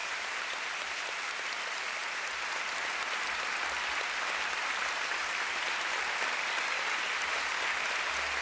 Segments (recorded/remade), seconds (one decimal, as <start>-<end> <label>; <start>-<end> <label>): 0.0-8.4 recorded